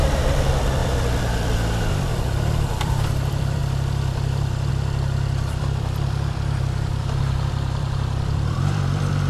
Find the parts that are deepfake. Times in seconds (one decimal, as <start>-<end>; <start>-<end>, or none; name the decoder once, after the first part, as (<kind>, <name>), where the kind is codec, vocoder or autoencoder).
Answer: 0.0-3.6 (vocoder, BigVGAN v2); 4.7-9.3